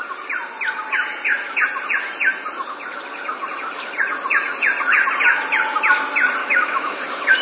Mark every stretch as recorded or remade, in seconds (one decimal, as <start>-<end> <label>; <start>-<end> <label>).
0.0-6.4 recorded; 6.4-7.0 remade; 7.0-7.4 recorded